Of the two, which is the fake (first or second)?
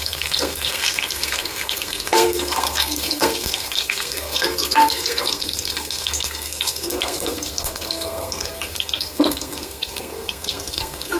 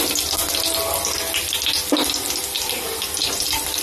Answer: first